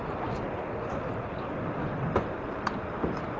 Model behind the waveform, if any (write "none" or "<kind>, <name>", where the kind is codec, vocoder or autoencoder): none